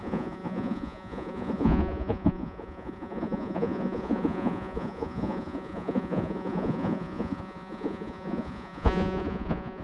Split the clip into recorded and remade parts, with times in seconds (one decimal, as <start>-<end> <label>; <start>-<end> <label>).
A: 0.0-9.8 remade